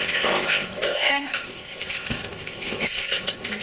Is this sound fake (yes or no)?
yes